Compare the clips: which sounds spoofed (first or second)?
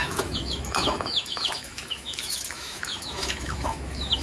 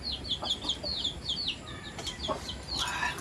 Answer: first